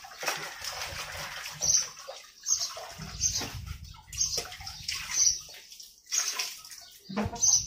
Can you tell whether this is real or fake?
real